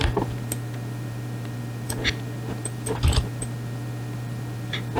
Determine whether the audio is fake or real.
real